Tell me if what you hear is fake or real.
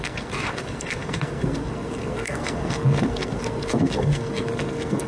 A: fake